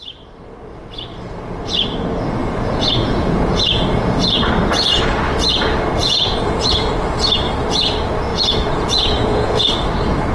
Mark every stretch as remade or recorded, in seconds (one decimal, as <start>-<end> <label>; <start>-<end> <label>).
0.0-2.4 recorded; 2.4-4.5 remade; 4.5-6.0 recorded; 6.0-6.9 remade; 6.9-8.3 recorded; 8.3-9.6 remade; 9.6-10.3 recorded